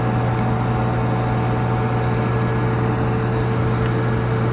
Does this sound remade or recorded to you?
recorded